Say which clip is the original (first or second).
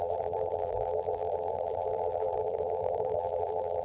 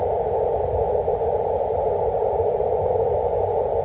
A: second